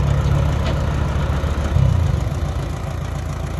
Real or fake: real